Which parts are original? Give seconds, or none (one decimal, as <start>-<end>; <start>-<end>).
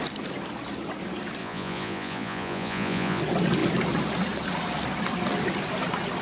0.0-1.4; 3.2-6.2